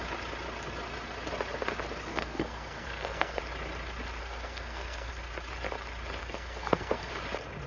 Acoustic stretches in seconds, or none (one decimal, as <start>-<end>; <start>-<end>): 0.0-2.1; 3.4-4.2; 5.1-6.2; 7.1-7.7

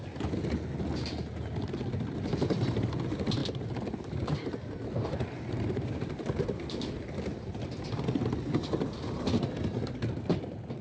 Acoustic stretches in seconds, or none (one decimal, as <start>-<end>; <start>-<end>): 0.0-10.8

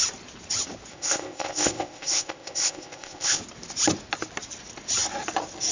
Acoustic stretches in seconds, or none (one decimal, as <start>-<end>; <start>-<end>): 0.0-0.9; 3.4-5.7